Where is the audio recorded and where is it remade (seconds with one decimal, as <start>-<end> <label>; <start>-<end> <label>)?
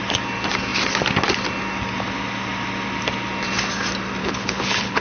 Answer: 0.0-4.2 recorded; 4.2-5.0 remade